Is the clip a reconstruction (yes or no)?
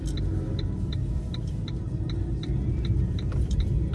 yes